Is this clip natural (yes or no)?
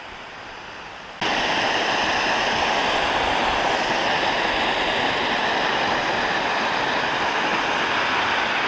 yes